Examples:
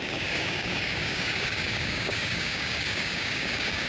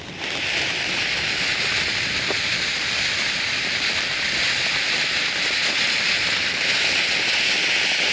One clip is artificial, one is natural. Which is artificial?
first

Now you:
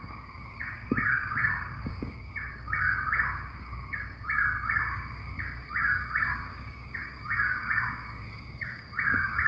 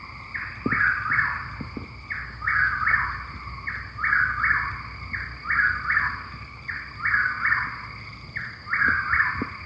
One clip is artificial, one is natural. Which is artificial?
first